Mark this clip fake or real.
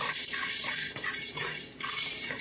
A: fake